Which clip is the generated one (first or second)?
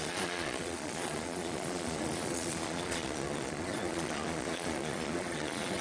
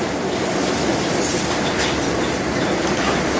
first